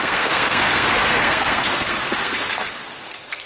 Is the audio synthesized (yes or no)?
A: yes